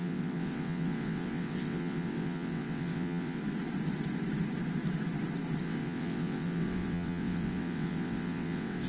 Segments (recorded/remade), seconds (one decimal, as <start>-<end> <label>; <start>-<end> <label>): 0.0-3.4 remade; 3.4-5.6 recorded; 5.6-8.9 remade